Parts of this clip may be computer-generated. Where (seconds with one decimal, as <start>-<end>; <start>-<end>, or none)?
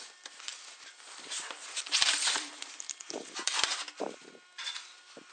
0.5-3.7